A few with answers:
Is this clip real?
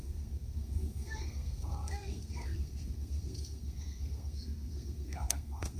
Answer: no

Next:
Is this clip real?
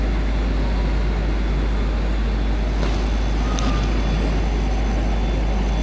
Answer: yes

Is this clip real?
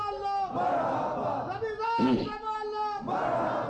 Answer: yes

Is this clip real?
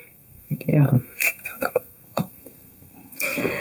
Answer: no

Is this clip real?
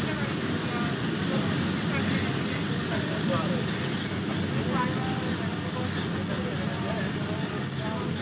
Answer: yes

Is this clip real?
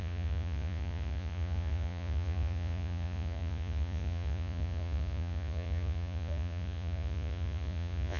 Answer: no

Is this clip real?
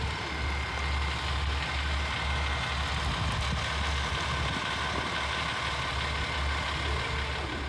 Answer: yes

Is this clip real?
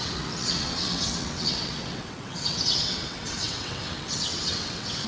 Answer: no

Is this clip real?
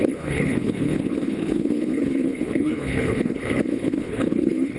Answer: no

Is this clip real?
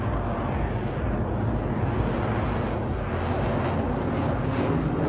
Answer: yes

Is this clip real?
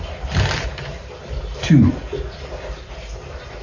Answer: yes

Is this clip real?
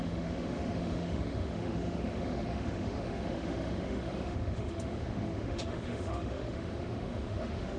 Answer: no